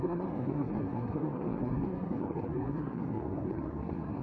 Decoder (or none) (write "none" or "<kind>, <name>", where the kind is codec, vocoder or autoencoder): codec, SNAC